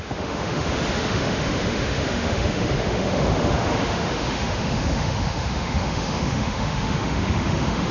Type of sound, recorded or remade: remade